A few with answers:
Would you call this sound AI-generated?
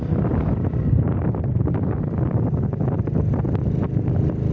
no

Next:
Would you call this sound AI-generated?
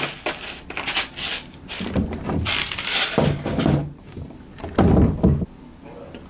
no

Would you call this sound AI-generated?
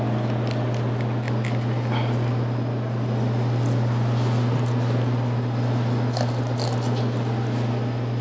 no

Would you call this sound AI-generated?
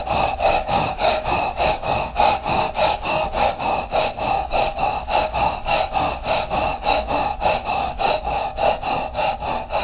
yes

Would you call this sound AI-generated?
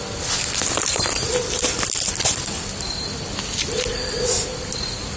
no